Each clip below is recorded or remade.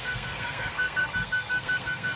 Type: remade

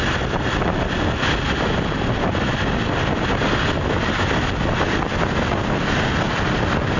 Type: recorded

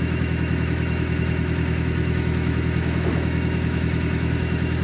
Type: remade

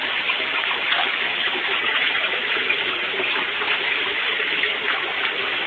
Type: remade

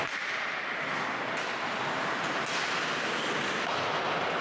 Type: recorded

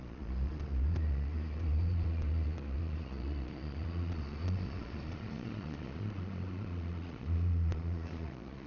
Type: remade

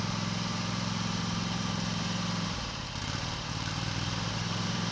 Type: remade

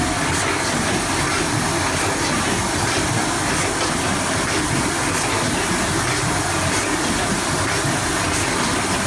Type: recorded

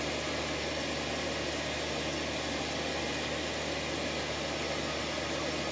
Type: recorded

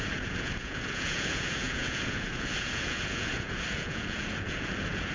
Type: remade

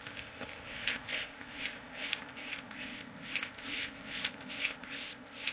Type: remade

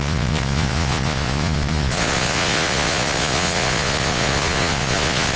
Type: remade